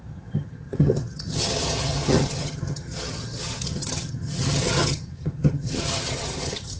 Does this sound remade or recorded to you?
remade